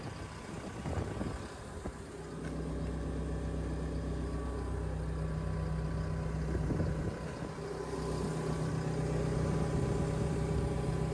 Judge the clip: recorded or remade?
recorded